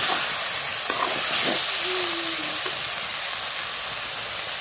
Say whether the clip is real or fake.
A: real